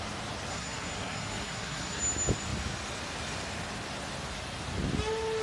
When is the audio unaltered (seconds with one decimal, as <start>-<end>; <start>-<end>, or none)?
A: 0.0-0.5; 2.0-5.4